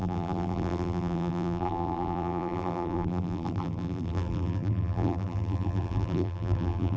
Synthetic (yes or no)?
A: yes